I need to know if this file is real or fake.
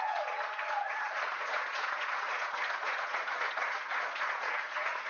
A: fake